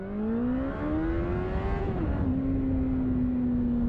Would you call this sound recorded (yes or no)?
yes